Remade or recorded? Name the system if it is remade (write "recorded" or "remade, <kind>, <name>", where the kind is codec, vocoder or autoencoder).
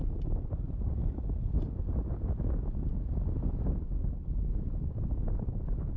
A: recorded